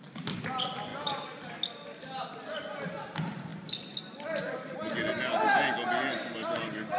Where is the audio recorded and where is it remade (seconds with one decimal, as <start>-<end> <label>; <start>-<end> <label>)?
0.0-7.0 recorded